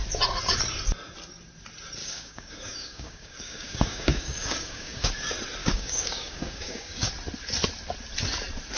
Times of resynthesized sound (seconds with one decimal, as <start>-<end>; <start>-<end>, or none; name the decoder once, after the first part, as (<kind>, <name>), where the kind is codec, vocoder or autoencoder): 2.0-5.1 (codec, DAC); 5.6-7.1